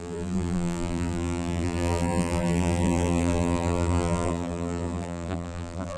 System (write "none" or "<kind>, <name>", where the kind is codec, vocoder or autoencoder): vocoder, BigVGAN v2